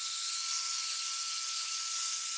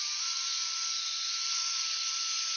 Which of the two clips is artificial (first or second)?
second